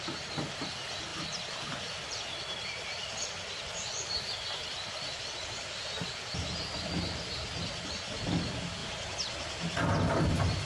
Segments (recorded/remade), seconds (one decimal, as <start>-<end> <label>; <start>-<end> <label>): 0.0-1.1 remade; 1.1-2.0 recorded; 2.0-8.8 remade; 8.8-10.1 recorded; 10.1-10.7 remade